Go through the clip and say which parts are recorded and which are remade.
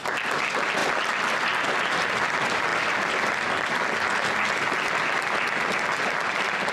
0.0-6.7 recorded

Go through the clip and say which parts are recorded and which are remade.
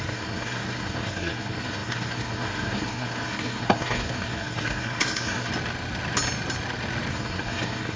0.0-5.5 remade; 5.5-7.1 recorded; 7.1-8.0 remade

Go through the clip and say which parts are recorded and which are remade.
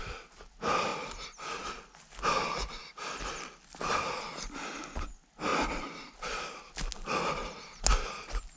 0.0-8.6 recorded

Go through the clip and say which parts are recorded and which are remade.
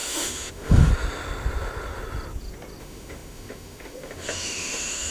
0.0-0.9 remade; 0.9-2.8 recorded; 2.8-5.1 remade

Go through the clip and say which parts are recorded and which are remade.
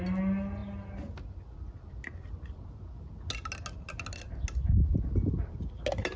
0.0-6.2 recorded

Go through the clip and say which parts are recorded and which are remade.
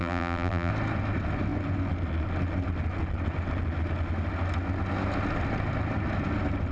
0.0-0.7 remade; 0.7-6.7 recorded